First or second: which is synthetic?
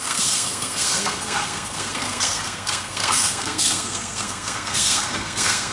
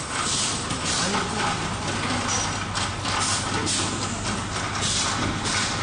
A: first